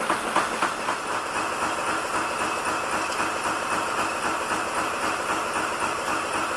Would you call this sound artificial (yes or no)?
no